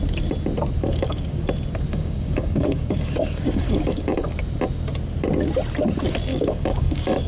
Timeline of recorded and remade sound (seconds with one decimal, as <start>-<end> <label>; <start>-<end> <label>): 0.0-0.9 recorded; 0.9-1.5 remade; 1.5-1.9 recorded; 1.9-4.4 remade; 4.4-6.3 recorded; 6.3-7.3 remade